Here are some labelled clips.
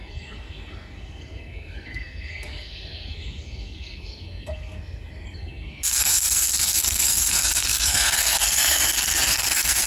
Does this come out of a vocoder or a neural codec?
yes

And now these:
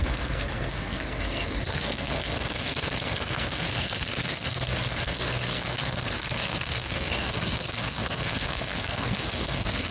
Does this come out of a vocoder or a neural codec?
yes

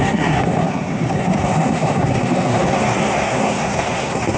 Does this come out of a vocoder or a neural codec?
yes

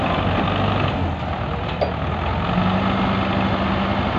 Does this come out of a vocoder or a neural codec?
no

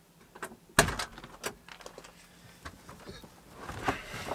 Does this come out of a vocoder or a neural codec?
no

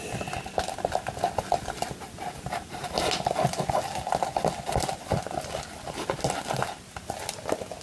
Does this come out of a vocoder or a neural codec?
no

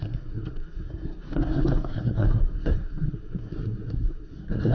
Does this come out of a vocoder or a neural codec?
yes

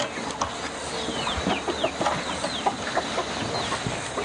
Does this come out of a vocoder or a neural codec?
no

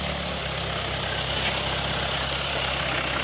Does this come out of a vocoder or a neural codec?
no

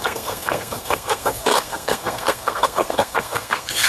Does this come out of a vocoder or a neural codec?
yes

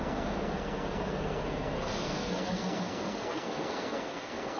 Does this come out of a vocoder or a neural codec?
yes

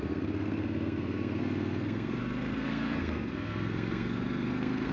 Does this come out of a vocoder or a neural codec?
yes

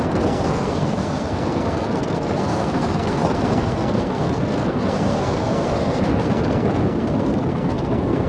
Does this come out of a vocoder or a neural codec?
yes